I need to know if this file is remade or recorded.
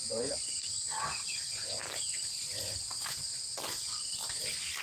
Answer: remade